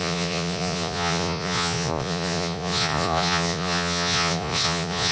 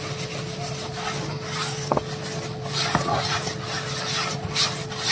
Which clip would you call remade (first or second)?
first